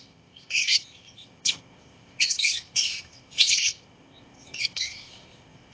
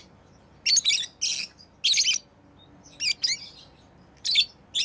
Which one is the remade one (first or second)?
first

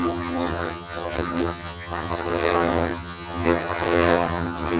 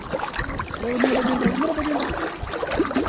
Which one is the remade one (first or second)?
first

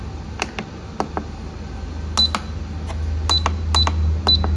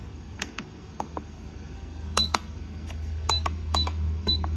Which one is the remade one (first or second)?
second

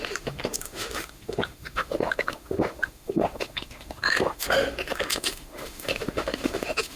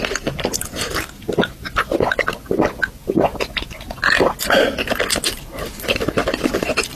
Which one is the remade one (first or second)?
first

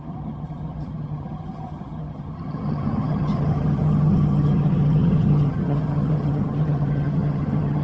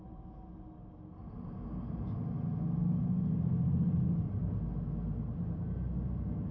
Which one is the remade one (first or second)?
first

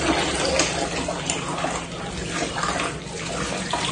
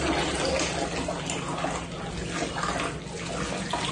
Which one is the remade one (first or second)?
first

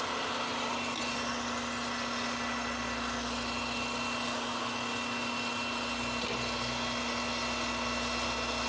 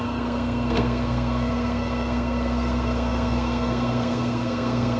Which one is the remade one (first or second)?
second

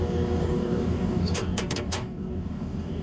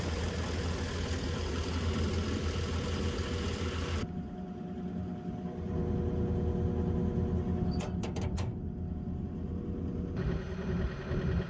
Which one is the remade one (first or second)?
first